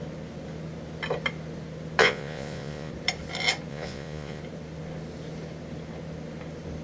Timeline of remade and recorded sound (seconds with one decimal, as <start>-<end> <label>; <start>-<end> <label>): 0.0-2.0 recorded; 2.0-2.9 remade; 2.9-3.7 recorded; 3.7-4.4 remade; 4.4-6.8 recorded